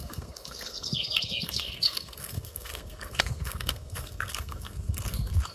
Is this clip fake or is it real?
fake